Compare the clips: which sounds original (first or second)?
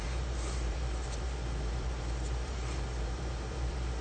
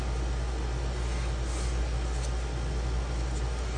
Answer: second